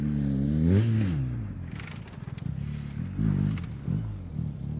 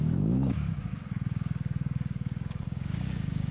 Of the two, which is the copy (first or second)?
second